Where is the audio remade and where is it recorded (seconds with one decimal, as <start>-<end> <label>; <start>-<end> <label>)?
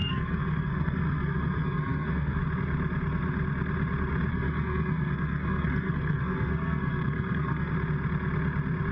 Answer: 0.0-2.4 remade; 2.4-4.3 recorded; 4.3-7.7 remade; 7.7-8.9 recorded